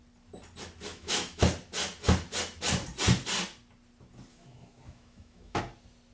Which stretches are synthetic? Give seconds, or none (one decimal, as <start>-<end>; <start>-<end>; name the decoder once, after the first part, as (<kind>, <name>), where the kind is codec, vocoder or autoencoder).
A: 0.9-1.4 (autoencoder, DAC-VAE); 4.3-5.6